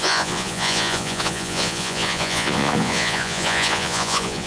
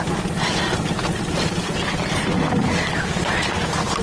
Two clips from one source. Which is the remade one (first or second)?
first